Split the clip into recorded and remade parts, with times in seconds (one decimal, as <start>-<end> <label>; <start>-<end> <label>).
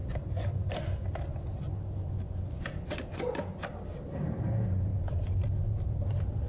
0.0-3.9 recorded; 3.9-6.5 remade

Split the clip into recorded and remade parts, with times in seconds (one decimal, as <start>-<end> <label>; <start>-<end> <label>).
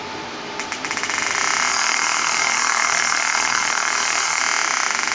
0.0-1.7 recorded; 1.7-4.4 remade; 4.4-5.1 recorded